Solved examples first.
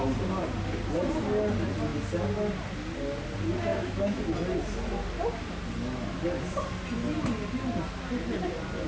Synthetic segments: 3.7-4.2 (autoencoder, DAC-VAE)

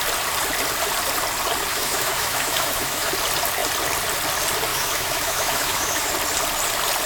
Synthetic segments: 1.7-3.1 (autoencoder, DAC-VAE); 4.7-6.1

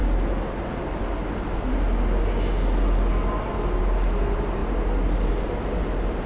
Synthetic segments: none

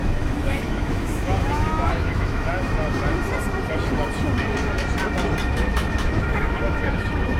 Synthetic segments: 0.0-2.5 (autoencoder, DAC-VAE); 5.5-7.4